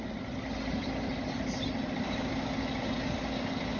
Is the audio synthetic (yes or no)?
no